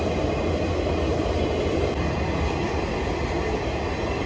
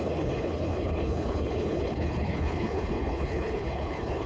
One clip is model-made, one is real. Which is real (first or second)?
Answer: first